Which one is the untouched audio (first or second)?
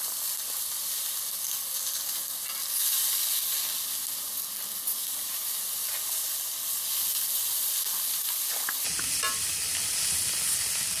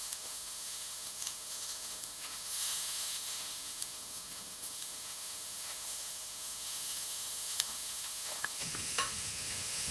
first